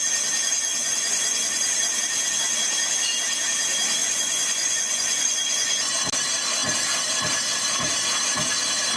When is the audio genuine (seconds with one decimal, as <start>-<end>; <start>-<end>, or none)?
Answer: 0.0-0.8; 1.6-4.0; 5.9-9.0